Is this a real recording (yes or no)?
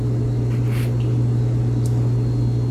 yes